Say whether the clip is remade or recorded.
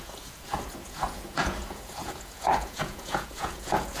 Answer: remade